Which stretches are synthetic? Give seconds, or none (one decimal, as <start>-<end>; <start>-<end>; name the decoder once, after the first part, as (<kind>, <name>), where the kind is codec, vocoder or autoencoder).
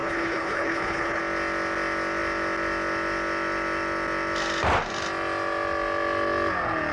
0.0-1.2 (codec, HILCodec)